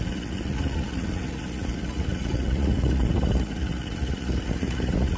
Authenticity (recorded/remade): remade